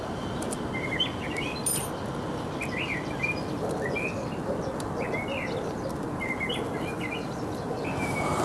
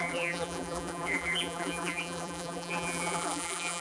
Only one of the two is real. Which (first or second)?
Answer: first